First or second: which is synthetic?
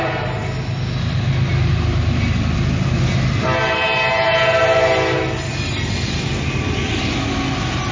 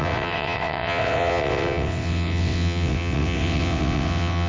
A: second